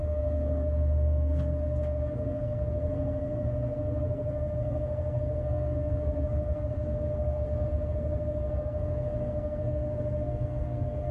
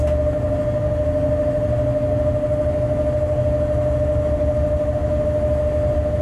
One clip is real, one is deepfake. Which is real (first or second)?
second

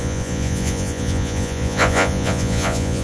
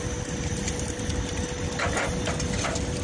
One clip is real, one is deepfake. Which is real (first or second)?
second